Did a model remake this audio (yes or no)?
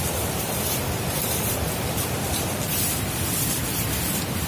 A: yes